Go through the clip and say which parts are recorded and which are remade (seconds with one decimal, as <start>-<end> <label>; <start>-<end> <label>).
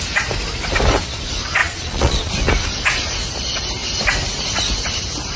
0.0-1.6 recorded; 1.6-2.3 remade; 2.3-5.4 recorded